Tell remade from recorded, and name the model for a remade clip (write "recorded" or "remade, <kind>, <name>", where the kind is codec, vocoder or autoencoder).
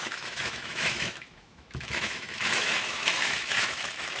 remade, autoencoder, DAC-VAE